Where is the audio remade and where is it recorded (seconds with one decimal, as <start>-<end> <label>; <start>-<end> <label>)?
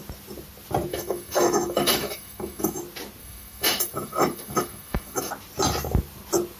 0.0-0.9 recorded; 0.9-2.8 remade; 2.8-3.2 recorded; 3.2-5.3 remade; 5.3-6.6 recorded